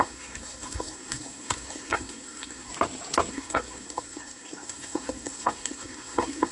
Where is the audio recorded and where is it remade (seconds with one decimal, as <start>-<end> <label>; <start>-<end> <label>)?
0.0-2.7 remade; 2.7-3.3 recorded; 3.3-6.5 remade